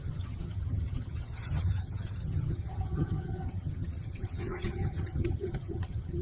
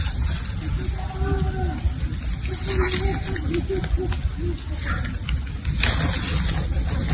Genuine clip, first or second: second